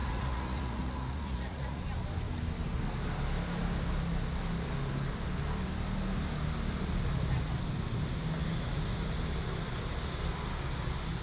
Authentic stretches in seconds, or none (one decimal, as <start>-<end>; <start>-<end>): 1.8-11.2